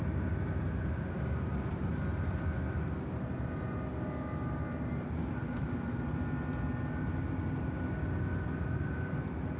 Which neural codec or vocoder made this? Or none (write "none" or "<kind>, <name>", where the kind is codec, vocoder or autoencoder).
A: none